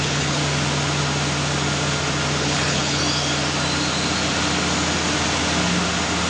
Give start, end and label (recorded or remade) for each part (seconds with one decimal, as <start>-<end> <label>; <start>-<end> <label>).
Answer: 0.0-0.4 remade; 0.4-2.4 recorded; 2.4-3.0 remade; 3.0-6.3 recorded